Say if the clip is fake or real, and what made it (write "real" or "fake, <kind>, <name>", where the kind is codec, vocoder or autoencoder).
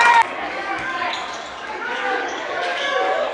fake, codec, DAC